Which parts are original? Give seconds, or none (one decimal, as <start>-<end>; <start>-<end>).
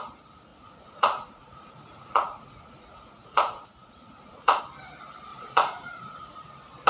0.0-0.5; 4.6-5.3; 6.5-6.9